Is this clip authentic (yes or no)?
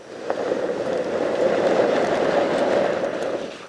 yes